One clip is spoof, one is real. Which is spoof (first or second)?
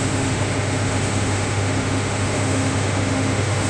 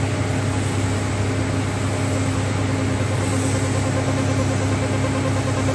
first